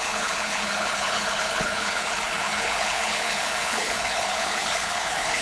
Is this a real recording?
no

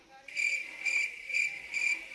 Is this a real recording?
yes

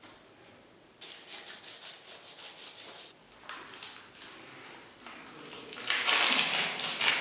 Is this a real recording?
yes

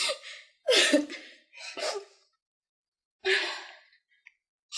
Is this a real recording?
yes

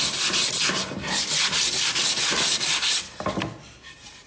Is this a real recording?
yes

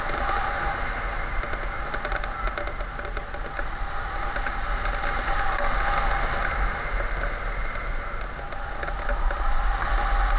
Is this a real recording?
yes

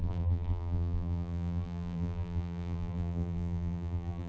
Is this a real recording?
no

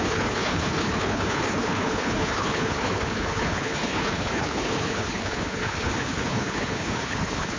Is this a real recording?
no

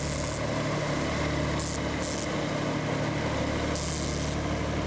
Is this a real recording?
yes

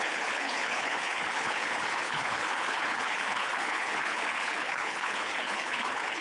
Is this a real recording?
no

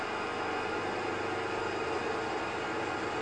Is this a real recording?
yes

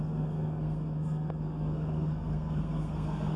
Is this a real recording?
no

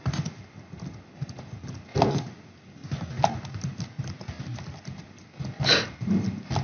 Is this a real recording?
yes